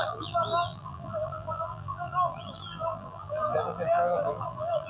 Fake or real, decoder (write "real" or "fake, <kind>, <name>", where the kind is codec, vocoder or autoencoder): fake, vocoder, BigVGAN v2